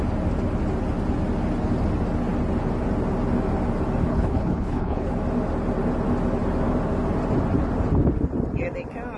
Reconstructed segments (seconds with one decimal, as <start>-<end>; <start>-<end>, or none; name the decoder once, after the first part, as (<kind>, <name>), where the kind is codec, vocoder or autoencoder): 4.1-5.1 (codec, HILCodec)